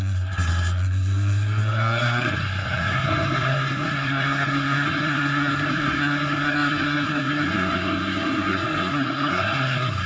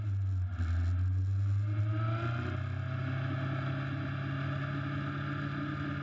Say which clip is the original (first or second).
second